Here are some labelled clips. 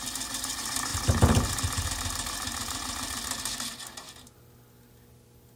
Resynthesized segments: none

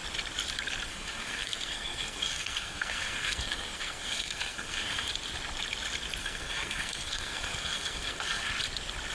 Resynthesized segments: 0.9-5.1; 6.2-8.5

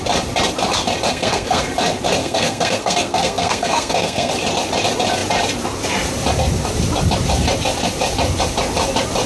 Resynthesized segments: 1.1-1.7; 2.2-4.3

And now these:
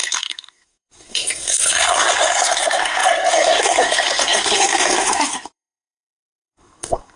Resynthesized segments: 0.0-7.2